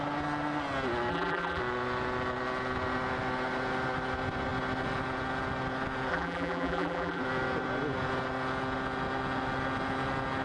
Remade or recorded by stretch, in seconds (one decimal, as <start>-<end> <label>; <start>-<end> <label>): 0.0-1.1 recorded; 1.1-1.6 remade; 1.6-6.1 recorded; 6.1-7.2 remade; 7.2-10.4 recorded